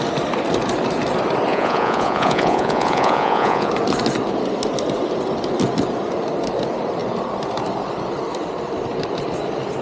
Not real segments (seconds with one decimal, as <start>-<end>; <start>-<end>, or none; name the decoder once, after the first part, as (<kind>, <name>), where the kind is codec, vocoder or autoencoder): 1.5-3.7 (vocoder, Vocos)